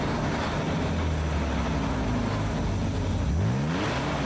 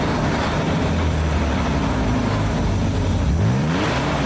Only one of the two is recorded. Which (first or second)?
first